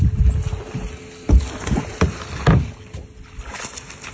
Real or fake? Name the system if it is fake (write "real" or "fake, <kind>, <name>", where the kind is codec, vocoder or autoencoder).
real